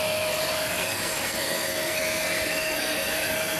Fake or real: fake